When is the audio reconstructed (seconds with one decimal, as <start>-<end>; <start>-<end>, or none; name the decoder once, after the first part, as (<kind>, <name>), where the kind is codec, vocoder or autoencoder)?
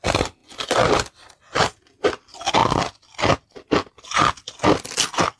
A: none